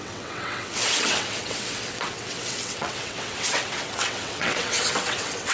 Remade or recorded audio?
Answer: remade